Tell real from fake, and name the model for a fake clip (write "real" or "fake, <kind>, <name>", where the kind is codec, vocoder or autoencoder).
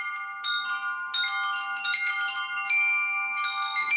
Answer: real